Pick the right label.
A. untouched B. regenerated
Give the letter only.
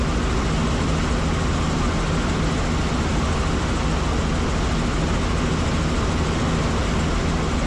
A